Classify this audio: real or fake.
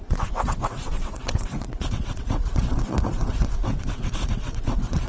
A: fake